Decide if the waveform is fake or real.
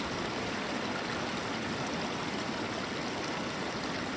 real